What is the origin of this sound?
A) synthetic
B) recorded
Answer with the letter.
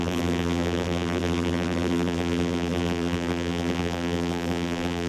A